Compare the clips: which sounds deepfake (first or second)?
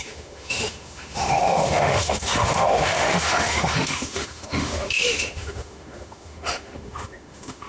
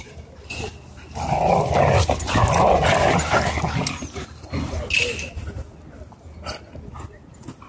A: first